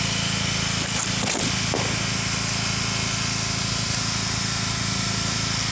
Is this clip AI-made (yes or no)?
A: no